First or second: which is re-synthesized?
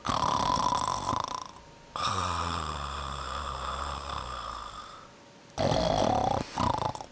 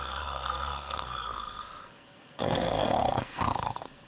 second